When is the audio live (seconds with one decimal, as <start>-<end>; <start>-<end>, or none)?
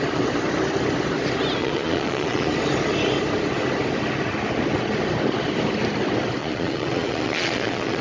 0.0-1.6; 2.5-6.4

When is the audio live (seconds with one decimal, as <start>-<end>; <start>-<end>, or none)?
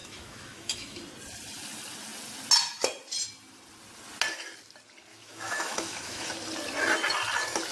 1.0-5.1; 6.3-7.7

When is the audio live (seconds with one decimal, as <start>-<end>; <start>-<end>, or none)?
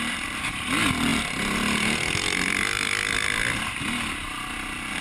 0.0-5.0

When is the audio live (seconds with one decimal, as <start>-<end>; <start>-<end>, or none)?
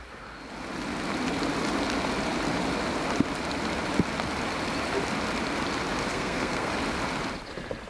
0.0-6.1; 6.7-7.9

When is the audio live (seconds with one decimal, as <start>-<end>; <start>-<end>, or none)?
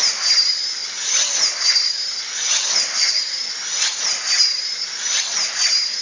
0.0-6.0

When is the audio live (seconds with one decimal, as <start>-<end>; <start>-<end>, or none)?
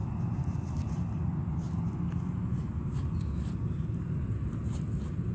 0.0-5.3